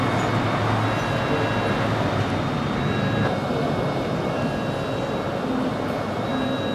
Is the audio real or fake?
real